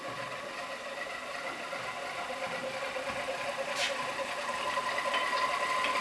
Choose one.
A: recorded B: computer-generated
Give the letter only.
A